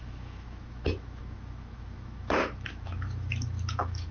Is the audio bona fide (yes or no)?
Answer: no